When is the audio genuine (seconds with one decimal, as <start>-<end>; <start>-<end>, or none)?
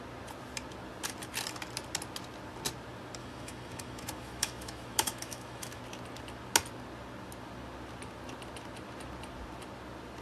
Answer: 0.0-3.2; 5.8-10.2